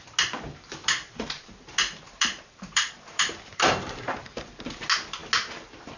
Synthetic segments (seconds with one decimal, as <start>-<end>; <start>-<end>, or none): 0.8-4.4